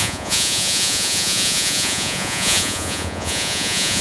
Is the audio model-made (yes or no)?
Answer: yes